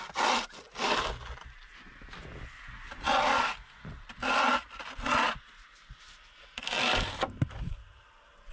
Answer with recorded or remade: recorded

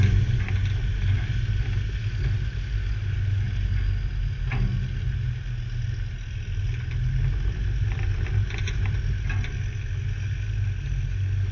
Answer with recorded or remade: recorded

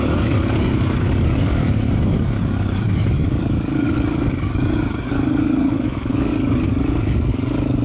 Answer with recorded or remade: remade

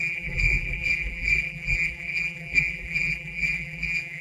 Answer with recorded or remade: remade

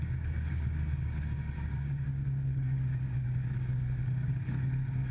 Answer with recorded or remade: remade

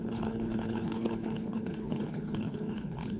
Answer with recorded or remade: remade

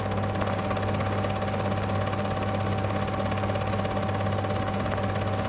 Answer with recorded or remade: recorded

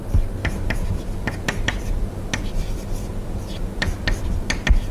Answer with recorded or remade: recorded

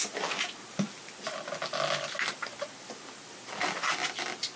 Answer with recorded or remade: recorded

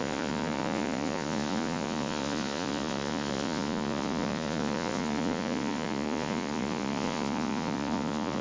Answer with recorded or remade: remade